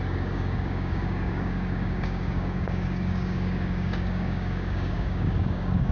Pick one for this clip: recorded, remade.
remade